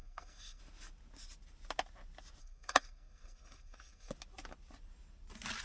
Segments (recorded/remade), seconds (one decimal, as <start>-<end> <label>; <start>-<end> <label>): 0.0-0.6 remade; 0.6-2.4 recorded; 2.4-4.1 remade; 4.1-5.6 recorded